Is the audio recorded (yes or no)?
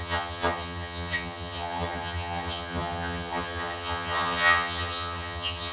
no